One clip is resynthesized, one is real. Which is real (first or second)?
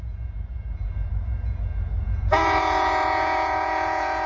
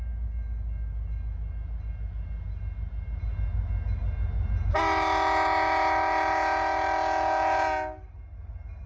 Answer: second